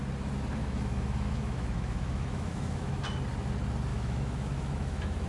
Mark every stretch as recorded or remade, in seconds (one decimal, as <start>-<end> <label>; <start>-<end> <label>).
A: 0.0-0.6 recorded; 0.6-3.0 remade; 3.0-3.9 recorded; 3.9-5.3 remade